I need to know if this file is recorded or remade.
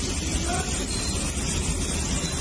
recorded